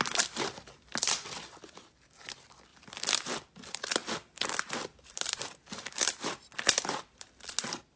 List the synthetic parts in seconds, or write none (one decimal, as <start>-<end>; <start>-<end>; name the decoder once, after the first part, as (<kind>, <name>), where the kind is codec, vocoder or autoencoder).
2.7-7.5 (vocoder, BigVGAN v2)